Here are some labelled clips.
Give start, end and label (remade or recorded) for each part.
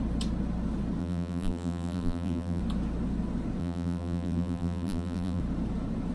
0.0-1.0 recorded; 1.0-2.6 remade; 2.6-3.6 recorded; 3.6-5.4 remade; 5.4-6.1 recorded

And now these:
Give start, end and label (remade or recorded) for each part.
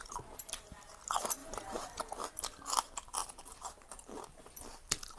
0.0-0.9 remade; 0.9-1.4 recorded; 1.4-2.0 remade; 2.0-3.2 recorded; 3.2-4.4 remade; 4.4-5.2 recorded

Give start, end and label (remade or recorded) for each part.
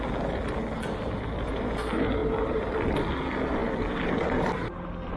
0.0-2.2 recorded; 2.2-3.1 remade; 3.1-3.6 recorded; 3.6-5.2 remade